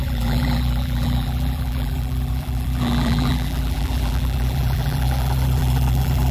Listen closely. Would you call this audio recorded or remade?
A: remade